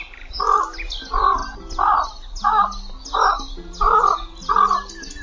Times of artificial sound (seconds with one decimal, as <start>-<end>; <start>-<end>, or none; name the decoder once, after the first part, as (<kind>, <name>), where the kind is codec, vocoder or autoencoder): none